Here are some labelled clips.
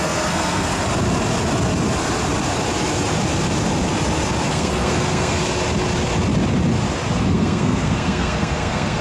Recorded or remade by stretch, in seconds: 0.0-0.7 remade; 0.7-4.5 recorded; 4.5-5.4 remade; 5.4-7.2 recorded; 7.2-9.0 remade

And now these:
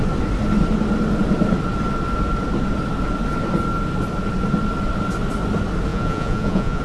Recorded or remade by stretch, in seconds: 0.0-5.9 recorded; 5.9-6.8 remade

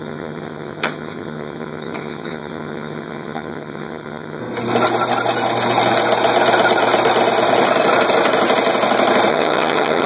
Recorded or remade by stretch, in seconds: 0.0-4.4 remade; 4.4-9.3 recorded; 9.3-10.1 remade

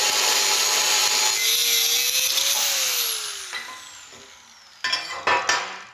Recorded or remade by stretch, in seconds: 0.0-5.9 recorded

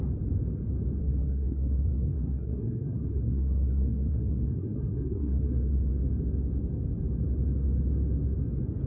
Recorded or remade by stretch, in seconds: 0.0-1.0 recorded; 1.0-5.9 remade; 5.9-8.9 recorded

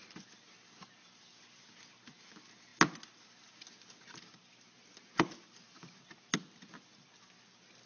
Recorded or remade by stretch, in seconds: 0.0-7.9 recorded

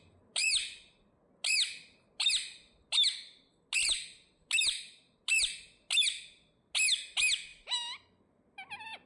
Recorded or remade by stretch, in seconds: 0.0-9.1 recorded

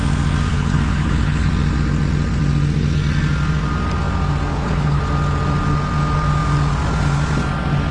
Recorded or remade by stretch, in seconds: 0.0-0.5 recorded; 0.5-1.5 remade; 1.5-4.5 recorded; 4.5-5.0 remade; 5.0-7.9 recorded